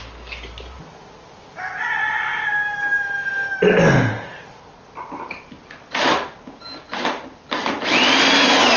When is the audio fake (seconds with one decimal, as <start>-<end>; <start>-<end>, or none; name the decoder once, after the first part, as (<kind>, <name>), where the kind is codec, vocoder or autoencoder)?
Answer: none